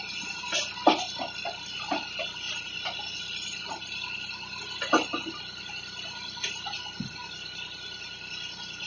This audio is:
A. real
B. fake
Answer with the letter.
A